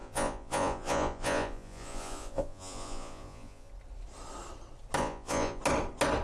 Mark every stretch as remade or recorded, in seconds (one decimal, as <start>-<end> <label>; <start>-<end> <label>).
0.0-3.7 remade; 3.7-5.0 recorded; 5.0-5.6 remade; 5.6-6.2 recorded